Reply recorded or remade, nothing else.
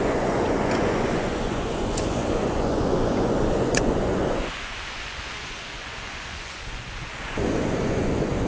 remade